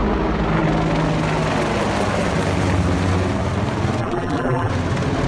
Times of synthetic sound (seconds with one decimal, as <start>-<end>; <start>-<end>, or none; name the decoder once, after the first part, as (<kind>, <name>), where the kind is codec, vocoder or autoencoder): 4.0-4.7 (vocoder, BigVGAN v2)